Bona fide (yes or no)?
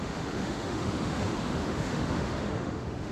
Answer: no